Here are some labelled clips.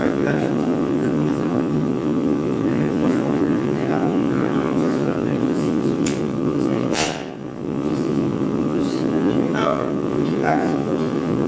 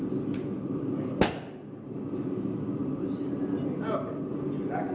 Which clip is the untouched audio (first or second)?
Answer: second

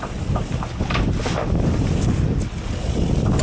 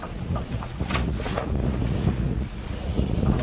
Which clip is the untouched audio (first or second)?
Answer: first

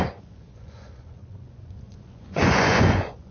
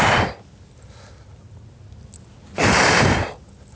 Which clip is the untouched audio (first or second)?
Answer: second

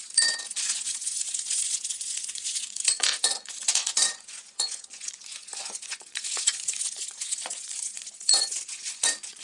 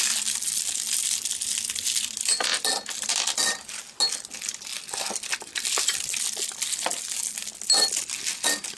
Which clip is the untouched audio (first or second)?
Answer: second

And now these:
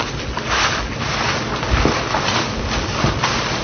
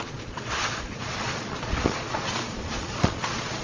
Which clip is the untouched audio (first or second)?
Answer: first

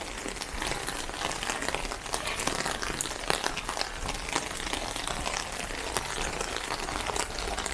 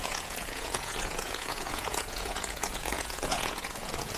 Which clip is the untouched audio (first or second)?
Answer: first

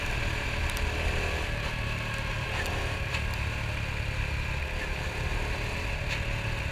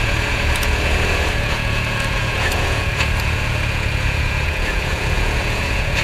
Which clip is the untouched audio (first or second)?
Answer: first